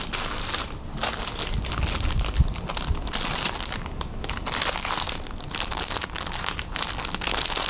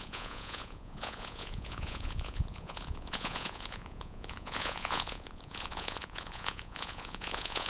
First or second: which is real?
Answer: first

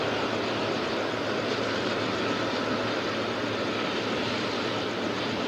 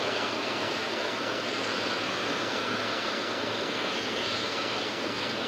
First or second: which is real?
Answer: first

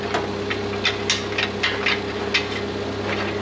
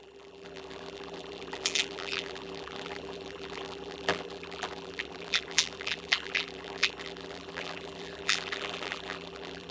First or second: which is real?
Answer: first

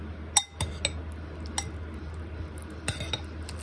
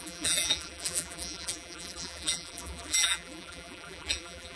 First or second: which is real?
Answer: first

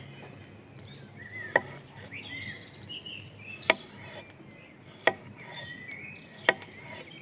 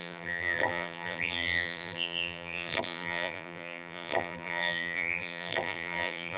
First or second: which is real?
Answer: first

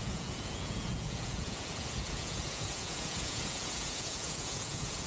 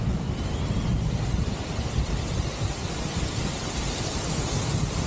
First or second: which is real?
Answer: second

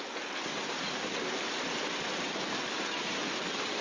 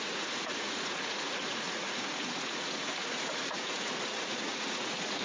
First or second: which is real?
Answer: first